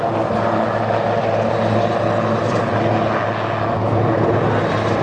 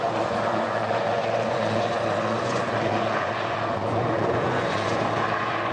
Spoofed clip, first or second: second